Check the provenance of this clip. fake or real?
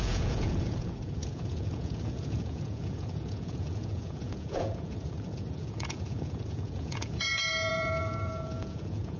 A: fake